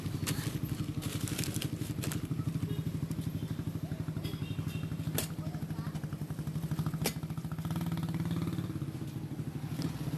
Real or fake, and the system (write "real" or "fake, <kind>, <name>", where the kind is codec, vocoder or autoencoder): real